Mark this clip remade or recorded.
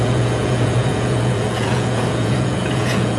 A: remade